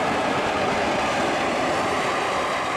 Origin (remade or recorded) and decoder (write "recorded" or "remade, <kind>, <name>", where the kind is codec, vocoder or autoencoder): remade, vocoder, BigVGAN v2